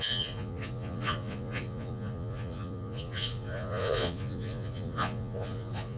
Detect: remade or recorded remade